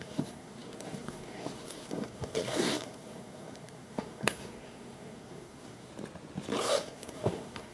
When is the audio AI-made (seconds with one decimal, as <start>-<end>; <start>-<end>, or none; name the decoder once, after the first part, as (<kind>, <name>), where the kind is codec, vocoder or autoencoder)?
0.0-5.9 (codec, SNAC); 6.6-7.7